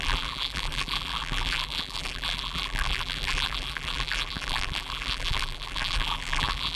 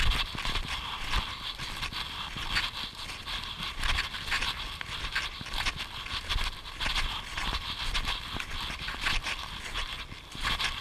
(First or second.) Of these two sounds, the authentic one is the second